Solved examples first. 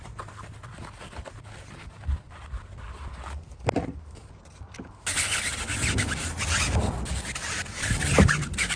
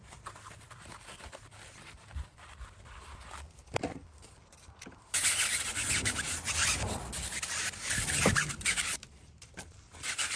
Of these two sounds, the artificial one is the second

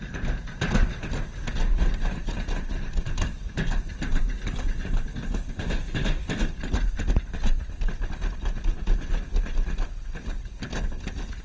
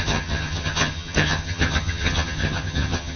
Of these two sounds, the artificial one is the second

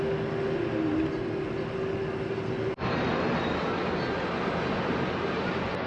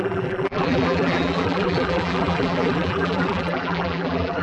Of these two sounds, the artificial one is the second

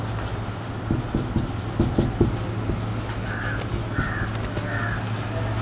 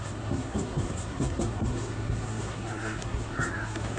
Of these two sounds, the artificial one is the second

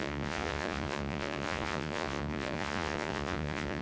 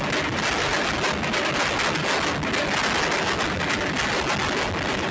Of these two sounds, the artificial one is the first